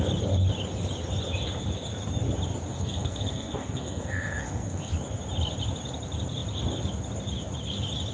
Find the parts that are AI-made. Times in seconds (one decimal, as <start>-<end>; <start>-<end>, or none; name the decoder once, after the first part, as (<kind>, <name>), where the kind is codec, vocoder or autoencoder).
2.7-4.9 (codec, SNAC)